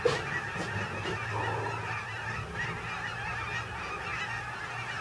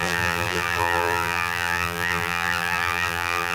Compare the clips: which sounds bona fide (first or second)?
first